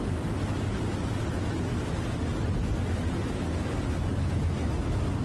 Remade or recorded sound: recorded